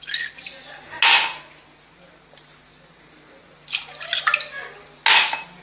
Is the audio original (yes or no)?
yes